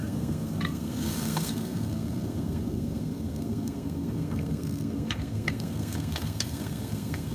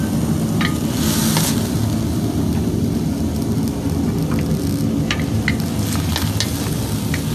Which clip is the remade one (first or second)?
first